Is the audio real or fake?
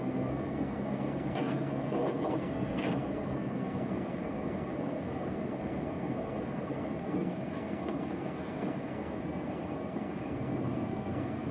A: fake